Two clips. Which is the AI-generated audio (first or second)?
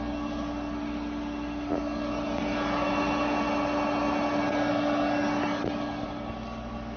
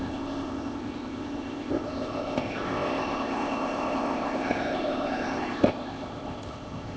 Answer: second